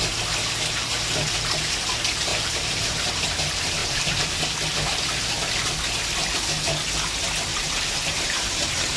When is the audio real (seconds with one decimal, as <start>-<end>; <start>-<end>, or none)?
0.0-2.3; 3.1-3.8; 4.4-7.5